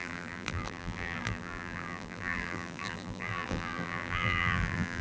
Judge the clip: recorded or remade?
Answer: remade